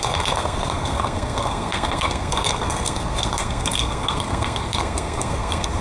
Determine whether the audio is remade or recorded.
remade